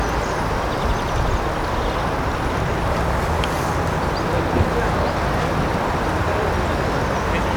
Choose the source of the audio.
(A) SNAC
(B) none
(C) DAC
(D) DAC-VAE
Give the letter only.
B